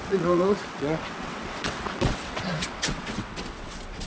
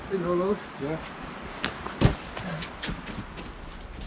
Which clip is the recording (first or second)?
second